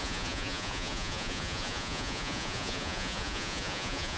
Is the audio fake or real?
fake